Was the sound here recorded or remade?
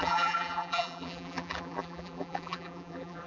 remade